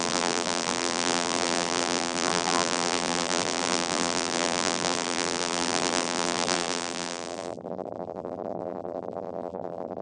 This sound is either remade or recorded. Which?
remade